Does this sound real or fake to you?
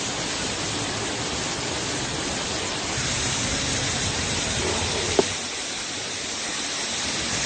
fake